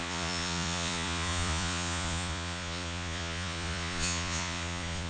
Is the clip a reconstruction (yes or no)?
yes